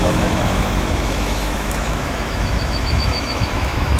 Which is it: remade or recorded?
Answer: remade